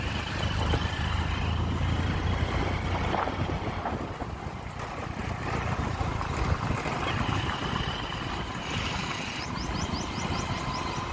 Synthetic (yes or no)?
no